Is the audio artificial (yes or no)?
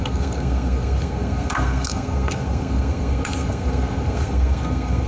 yes